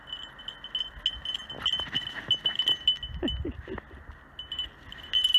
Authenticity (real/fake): real